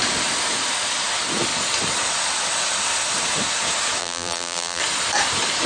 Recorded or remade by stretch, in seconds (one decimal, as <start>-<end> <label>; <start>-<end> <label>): 0.0-4.0 recorded; 4.0-4.8 remade; 4.8-5.7 recorded